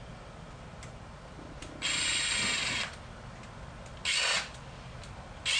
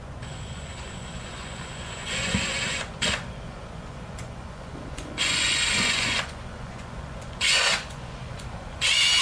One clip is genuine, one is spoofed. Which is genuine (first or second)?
first